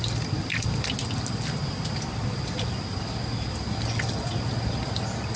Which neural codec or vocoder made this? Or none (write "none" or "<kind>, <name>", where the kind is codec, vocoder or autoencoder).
none